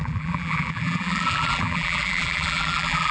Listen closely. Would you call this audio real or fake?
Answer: fake